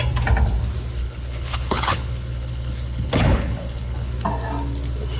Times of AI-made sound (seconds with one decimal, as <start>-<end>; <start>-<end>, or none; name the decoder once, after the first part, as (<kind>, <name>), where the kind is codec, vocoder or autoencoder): 1.0-4.1 (codec, HILCodec)